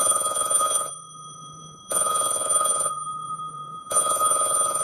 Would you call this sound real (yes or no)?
no